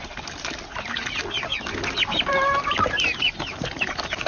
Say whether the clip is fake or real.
real